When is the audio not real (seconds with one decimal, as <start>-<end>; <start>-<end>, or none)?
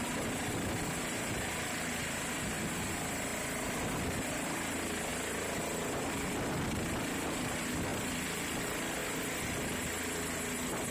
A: 0.0-5.1; 6.0-9.0